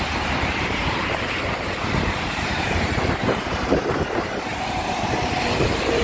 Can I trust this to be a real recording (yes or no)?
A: no